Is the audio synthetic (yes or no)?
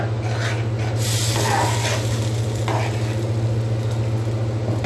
no